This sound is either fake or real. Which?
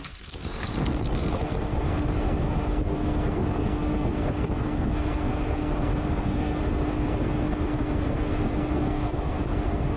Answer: fake